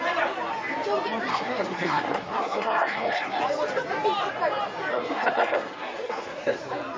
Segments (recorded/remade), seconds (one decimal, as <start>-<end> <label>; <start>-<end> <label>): 0.0-1.3 recorded; 1.3-3.4 remade; 3.4-4.9 recorded; 4.9-6.6 remade; 6.6-7.0 recorded